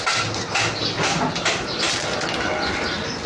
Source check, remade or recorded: recorded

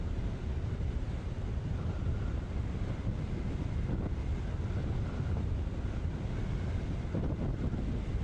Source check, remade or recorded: recorded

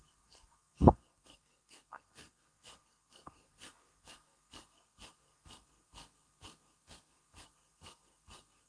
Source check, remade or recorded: remade